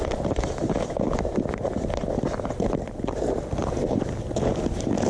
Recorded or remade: recorded